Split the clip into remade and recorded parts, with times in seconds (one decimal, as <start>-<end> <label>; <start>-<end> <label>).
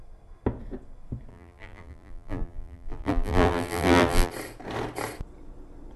0.0-1.3 recorded; 1.3-4.3 remade; 4.3-6.0 recorded